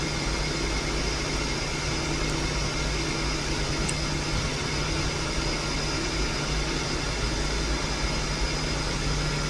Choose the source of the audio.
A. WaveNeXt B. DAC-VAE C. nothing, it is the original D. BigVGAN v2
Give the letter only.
C